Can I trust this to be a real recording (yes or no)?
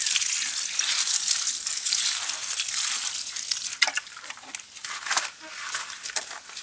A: yes